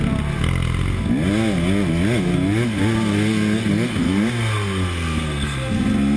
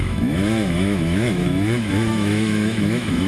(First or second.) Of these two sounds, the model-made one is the second